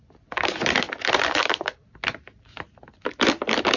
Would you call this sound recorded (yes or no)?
yes